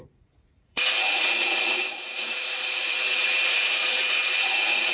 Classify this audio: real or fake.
fake